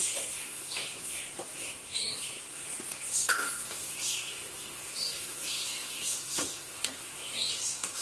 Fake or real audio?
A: fake